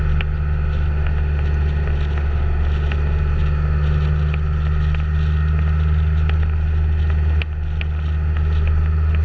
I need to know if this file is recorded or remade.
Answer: recorded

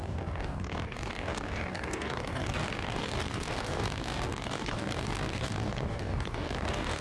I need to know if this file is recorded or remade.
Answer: remade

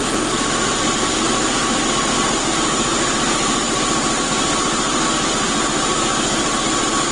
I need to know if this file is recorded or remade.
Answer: recorded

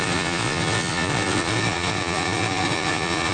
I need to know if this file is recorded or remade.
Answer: remade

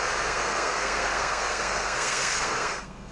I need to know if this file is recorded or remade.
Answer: remade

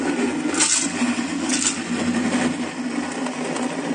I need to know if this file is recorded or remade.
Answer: recorded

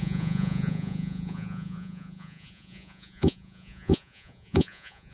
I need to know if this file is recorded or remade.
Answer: remade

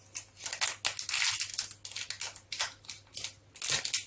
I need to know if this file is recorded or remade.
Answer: recorded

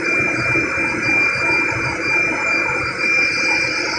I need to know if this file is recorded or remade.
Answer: recorded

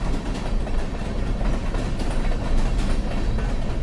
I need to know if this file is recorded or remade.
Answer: recorded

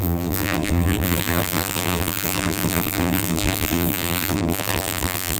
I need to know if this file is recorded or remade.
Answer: remade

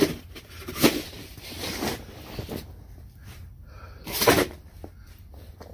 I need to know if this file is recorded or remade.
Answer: remade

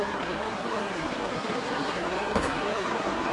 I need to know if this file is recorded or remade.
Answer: remade